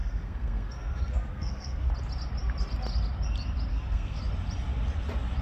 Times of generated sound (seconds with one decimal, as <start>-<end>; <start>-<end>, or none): 0.0-1.9; 3.7-4.2